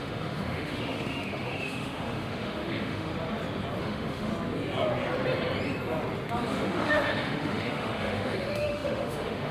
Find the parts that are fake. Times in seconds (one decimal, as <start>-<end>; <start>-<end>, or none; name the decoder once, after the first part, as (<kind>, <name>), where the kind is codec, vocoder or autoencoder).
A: 0.0-3.1 (autoencoder, DAC-VAE); 3.8-4.3; 6.5-9.5